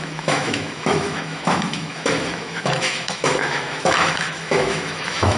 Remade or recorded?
remade